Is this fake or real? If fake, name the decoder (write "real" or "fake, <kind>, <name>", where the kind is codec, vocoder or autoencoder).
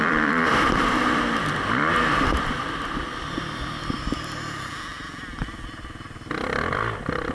fake, vocoder, BigVGAN v2